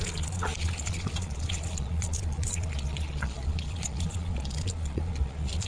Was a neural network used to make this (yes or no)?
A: yes